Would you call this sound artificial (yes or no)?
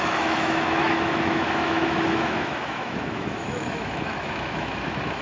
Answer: yes